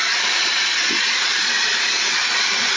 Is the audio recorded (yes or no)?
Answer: no